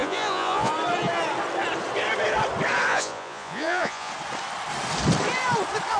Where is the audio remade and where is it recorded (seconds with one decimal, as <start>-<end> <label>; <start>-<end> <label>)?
0.0-0.7 remade; 0.7-2.9 recorded; 2.9-4.1 remade; 4.1-6.0 recorded